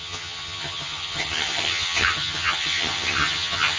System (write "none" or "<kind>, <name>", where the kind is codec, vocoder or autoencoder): vocoder, HiFi-GAN